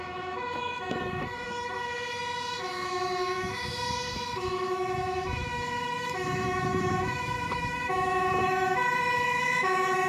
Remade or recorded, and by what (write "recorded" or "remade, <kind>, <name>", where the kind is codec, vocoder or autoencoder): remade, autoencoder, DAC-VAE